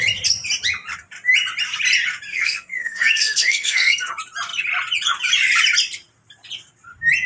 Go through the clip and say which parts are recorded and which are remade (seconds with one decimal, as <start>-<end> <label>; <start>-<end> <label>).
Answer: 0.0-2.3 recorded; 2.3-4.1 remade; 4.1-7.3 recorded